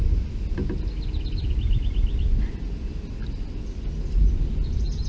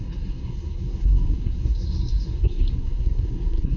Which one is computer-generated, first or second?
second